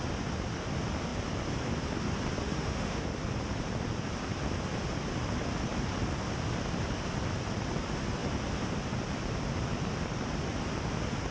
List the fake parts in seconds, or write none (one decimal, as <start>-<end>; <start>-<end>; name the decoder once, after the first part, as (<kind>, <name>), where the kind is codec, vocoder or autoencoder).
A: 2.4-3.2 (autoencoder, DAC-VAE)